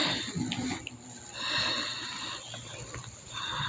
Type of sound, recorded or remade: recorded